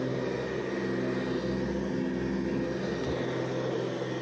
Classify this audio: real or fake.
real